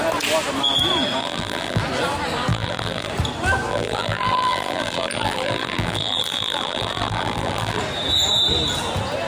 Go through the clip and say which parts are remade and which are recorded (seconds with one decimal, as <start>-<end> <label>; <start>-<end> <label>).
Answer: 0.0-1.2 recorded; 1.2-1.8 remade; 1.8-2.5 recorded; 2.5-3.1 remade; 3.1-3.7 recorded; 3.7-7.8 remade; 7.8-9.3 recorded